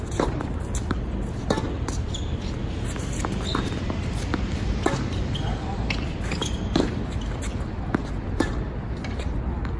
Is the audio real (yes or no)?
yes